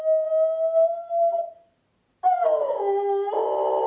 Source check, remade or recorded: recorded